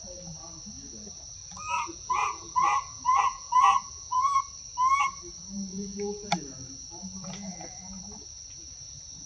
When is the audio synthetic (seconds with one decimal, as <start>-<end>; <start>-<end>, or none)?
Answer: 1.4-4.4; 5.7-6.3